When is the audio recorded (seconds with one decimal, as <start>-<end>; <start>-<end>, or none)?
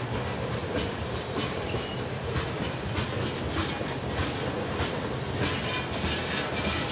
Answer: 0.0-0.6; 2.9-6.9